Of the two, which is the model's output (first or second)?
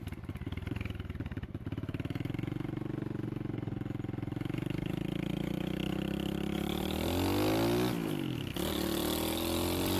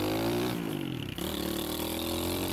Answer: second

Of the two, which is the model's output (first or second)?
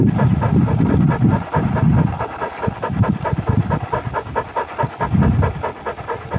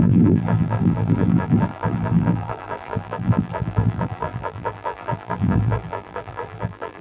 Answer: second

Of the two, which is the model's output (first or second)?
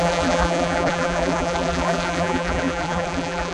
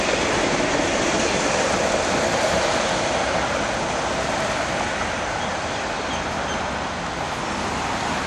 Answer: first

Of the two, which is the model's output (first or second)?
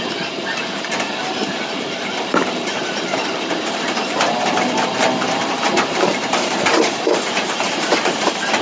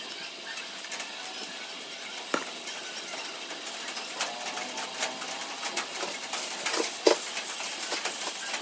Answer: first